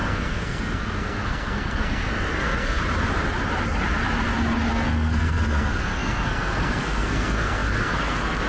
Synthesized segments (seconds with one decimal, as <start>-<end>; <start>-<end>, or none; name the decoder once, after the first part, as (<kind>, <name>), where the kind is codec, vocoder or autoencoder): 0.0-2.8 (codec, SNAC); 4.7-8.5